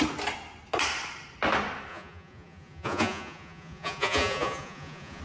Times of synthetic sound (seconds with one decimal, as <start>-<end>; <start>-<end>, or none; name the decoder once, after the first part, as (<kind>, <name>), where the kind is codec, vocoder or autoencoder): 1.9-5.2 (vocoder, Vocos)

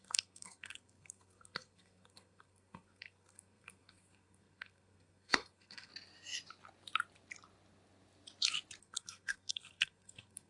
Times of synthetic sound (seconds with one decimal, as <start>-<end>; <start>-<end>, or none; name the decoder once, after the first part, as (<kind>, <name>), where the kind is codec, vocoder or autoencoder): 0.0-5.9 (codec, SNAC); 8.8-10.5

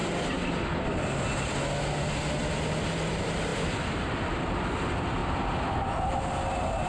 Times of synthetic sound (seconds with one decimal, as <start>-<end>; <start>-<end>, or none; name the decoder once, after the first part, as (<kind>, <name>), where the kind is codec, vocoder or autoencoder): 0.0-1.2 (vocoder, BigVGAN v2); 3.5-4.2; 5.2-5.8

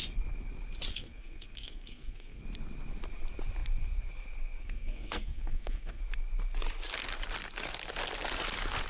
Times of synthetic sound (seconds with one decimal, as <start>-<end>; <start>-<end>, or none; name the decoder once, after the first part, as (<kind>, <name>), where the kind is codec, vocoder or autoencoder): 0.9-2.4 (codec, SNAC); 4.6-6.0

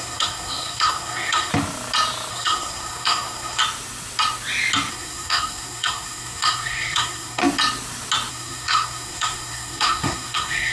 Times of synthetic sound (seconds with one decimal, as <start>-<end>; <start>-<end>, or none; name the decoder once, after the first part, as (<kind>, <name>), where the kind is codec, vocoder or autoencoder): 0.0-1.5 (codec, SNAC); 2.3-3.6; 4.9-7.4; 8.3-10.7

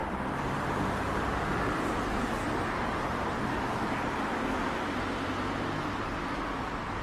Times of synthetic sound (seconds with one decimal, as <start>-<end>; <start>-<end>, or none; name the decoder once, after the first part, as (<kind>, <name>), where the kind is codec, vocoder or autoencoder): 0.0-4.1 (vocoder, BigVGAN v2)